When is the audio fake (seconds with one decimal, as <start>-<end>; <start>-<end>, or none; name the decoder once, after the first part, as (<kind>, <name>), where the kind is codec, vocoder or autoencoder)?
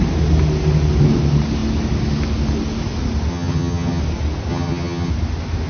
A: 3.3-4.0 (vocoder, HiFi-GAN); 4.5-5.1